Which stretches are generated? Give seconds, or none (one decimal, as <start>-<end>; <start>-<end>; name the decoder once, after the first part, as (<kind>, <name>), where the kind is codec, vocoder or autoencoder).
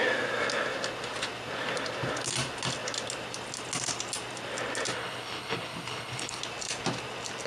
4.9-6.4 (codec, HILCodec)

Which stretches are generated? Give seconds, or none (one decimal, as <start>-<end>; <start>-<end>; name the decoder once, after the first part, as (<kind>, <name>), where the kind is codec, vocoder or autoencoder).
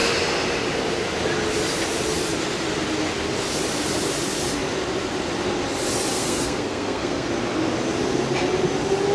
6.1-7.3 (codec, SNAC)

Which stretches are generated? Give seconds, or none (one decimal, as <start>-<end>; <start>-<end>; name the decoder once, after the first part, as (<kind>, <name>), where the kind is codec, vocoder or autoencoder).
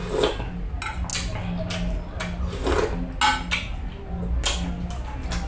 none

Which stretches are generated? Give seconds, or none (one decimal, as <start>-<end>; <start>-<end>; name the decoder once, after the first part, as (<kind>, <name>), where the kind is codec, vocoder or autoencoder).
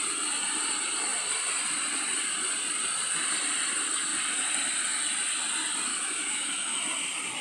5.9-6.8 (autoencoder, DAC-VAE)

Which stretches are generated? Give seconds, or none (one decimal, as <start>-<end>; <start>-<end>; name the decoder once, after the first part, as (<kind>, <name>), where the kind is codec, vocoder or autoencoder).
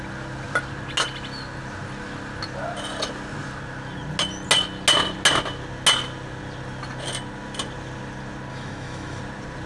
8.5-9.2 (autoencoder, DAC-VAE)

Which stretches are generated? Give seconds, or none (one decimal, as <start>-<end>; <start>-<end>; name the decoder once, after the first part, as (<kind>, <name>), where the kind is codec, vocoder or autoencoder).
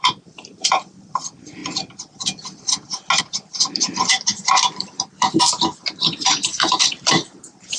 0.0-1.6 (vocoder, BigVGAN v2); 3.2-7.8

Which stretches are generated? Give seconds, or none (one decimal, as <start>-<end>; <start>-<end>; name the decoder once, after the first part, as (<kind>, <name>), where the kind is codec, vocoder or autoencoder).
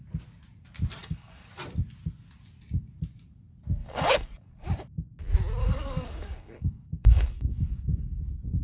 1.0-1.5 (codec, DAC); 3.8-4.5; 5.6-8.2